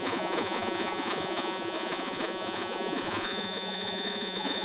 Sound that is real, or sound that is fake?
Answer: fake